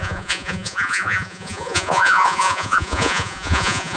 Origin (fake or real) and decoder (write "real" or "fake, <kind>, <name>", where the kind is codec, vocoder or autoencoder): fake, vocoder, Vocos